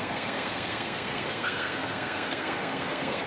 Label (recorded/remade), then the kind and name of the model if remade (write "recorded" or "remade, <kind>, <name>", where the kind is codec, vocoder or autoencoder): remade, codec, SNAC